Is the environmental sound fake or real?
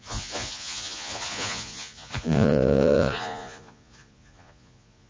fake